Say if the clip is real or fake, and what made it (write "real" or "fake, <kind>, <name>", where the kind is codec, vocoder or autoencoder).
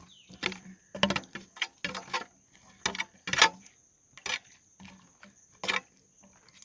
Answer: real